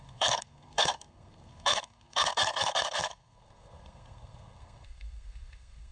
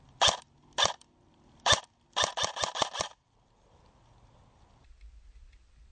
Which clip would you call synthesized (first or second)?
first